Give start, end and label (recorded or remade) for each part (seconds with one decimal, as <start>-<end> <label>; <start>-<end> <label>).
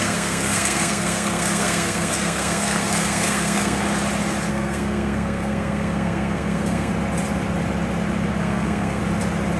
0.0-3.8 remade; 3.8-4.5 recorded; 4.5-6.9 remade; 6.9-8.4 recorded; 8.4-9.0 remade; 9.0-9.6 recorded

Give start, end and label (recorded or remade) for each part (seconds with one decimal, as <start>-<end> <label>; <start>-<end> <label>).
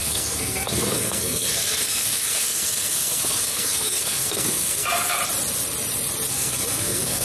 0.0-5.2 remade; 5.2-6.3 recorded; 6.3-7.2 remade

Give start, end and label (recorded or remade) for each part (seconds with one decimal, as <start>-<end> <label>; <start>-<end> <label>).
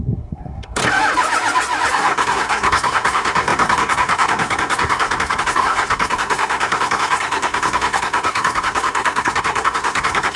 0.0-0.8 remade; 0.8-1.9 recorded; 1.9-10.4 remade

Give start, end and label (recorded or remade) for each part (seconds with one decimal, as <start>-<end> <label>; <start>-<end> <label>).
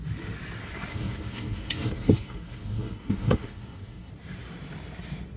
0.0-0.9 recorded; 0.9-4.1 remade; 4.1-5.4 recorded